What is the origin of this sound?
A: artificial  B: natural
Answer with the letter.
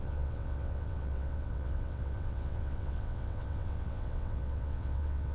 A